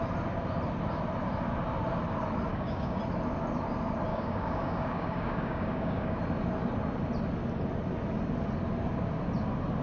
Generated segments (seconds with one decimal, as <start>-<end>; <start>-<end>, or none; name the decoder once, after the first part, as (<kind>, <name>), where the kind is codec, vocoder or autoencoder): 2.5-3.0 (codec, DAC); 4.1-6.2